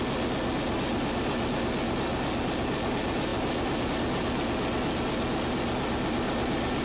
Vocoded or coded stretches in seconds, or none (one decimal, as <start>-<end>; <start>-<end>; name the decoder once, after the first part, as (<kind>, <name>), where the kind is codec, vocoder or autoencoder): none